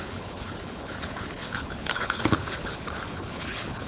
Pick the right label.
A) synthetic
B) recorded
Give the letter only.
A